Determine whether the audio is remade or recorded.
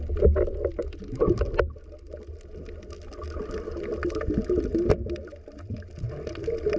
recorded